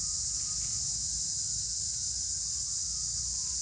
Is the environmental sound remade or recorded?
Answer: recorded